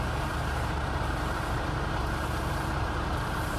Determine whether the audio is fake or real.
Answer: fake